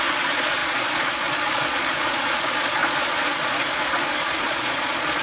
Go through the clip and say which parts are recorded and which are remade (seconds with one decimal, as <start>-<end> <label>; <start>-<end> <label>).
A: 0.0-5.2 remade